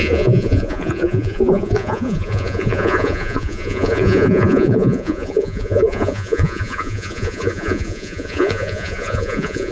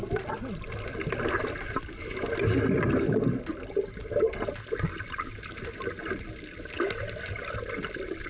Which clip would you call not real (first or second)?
first